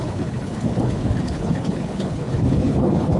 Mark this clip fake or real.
fake